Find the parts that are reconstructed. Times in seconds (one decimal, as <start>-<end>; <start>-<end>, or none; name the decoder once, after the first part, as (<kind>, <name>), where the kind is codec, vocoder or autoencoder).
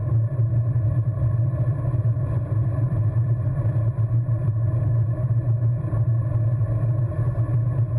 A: 0.0-3.5 (vocoder, BigVGAN v2); 4.4-6.3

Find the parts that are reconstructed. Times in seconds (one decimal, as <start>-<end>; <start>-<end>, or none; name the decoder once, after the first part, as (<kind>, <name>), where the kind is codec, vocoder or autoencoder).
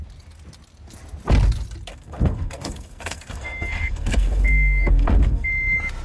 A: 1.9-5.5 (codec, SNAC)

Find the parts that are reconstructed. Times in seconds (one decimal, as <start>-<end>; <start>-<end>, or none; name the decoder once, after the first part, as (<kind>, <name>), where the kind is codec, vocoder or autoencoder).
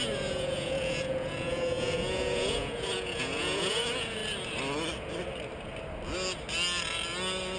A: 0.0-4.2 (vocoder, Vocos)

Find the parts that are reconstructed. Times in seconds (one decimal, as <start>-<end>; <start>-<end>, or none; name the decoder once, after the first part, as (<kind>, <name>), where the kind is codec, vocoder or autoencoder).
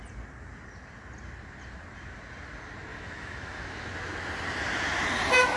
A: 2.9-3.9 (autoencoder, DAC-VAE)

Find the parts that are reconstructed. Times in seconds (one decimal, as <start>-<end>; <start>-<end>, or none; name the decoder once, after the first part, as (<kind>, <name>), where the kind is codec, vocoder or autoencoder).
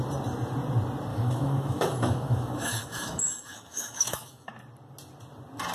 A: 1.1-4.5 (autoencoder, DAC-VAE)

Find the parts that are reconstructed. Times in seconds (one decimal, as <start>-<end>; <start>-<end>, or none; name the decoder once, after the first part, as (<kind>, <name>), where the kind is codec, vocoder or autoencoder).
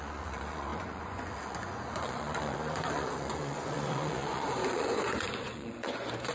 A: 0.0-6.3 (vocoder, Vocos)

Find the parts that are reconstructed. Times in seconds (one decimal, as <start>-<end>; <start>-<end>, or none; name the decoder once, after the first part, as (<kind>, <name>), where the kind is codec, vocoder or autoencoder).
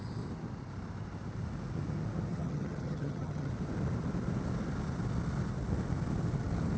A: 2.3-3.5 (vocoder, HiFi-GAN)